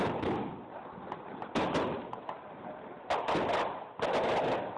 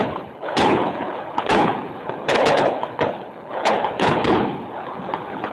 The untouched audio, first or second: first